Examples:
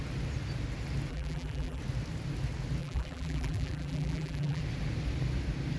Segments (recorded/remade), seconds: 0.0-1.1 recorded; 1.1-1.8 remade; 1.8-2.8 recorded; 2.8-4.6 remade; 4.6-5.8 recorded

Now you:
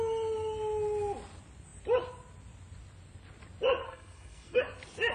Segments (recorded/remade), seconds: 0.0-3.8 recorded; 3.8-4.6 remade; 4.6-5.1 recorded

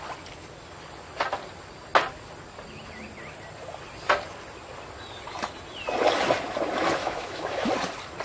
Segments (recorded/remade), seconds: 0.0-7.0 recorded; 7.0-7.7 remade; 7.7-8.2 recorded